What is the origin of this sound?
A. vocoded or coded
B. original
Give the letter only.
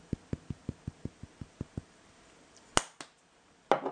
B